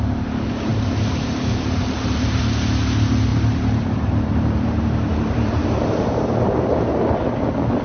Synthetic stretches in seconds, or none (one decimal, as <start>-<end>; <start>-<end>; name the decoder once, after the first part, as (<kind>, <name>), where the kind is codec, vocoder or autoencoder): 0.7-2.4 (vocoder, BigVGAN v2); 3.3-6.9